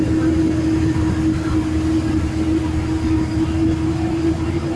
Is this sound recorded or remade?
recorded